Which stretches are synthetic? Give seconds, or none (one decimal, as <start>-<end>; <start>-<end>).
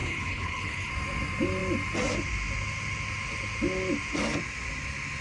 0.0-0.9